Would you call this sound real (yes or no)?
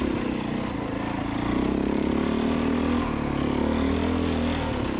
yes